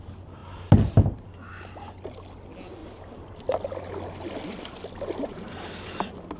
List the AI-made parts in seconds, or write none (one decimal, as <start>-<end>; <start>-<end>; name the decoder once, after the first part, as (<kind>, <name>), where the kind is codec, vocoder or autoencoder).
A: 2.8-3.4 (vocoder, BigVGAN v2)